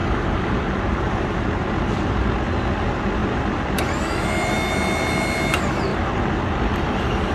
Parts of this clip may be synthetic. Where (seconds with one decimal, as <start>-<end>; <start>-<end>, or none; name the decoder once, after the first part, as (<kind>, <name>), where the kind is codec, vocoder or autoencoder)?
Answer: 0.0-0.9 (vocoder, BigVGAN v2); 3.2-3.8; 5.9-6.5